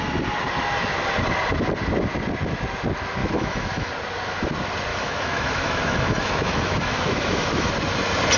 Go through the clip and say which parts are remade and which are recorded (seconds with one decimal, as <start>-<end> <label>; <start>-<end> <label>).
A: 0.0-3.2 recorded; 3.2-3.9 remade; 3.9-4.9 recorded; 4.9-7.7 remade; 7.7-8.4 recorded